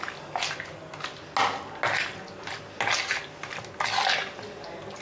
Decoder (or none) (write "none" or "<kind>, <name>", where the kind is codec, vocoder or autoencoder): none